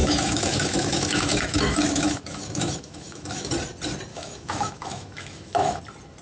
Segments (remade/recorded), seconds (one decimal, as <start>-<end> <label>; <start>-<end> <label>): 0.0-3.5 remade; 3.5-4.1 recorded; 4.1-5.8 remade; 5.8-6.2 recorded